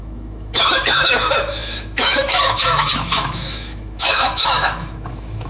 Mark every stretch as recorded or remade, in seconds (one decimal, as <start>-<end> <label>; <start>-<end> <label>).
0.0-5.5 remade